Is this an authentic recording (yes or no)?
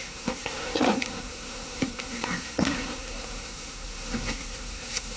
no